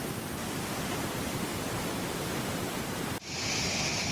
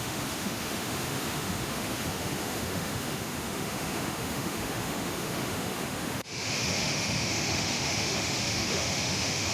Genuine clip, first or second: first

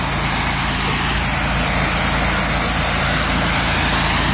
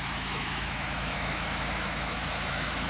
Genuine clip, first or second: first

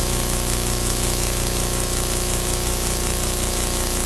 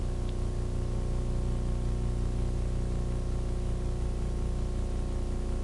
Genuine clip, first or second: second